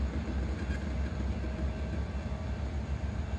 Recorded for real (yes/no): yes